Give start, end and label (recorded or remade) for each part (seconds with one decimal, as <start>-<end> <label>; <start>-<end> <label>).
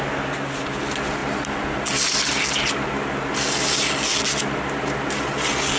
0.0-5.8 recorded